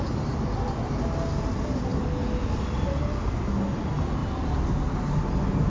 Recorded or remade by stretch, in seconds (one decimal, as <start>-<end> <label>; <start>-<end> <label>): 0.0-5.7 recorded